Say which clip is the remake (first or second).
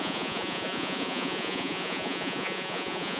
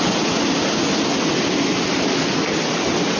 first